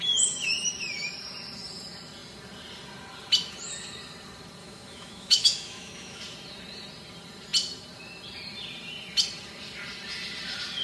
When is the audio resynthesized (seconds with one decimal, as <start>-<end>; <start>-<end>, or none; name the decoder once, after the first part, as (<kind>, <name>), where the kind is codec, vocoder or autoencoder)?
4.6-6.2 (autoencoder, DAC-VAE)